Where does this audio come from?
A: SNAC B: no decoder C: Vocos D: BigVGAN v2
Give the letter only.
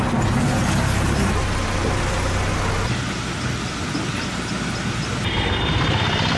B